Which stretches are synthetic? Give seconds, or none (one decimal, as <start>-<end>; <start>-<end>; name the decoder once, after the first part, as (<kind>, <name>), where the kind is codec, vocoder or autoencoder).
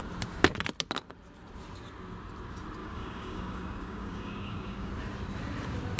2.8-4.9 (codec, DAC)